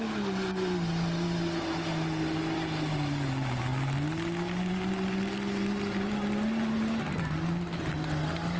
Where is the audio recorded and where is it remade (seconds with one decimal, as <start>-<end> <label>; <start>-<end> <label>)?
0.0-8.6 recorded